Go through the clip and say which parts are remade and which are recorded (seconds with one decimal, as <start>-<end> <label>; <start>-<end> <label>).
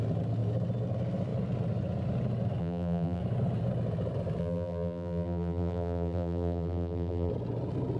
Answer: 0.0-2.6 recorded; 2.6-3.2 remade; 3.2-4.4 recorded; 4.4-7.3 remade; 7.3-8.0 recorded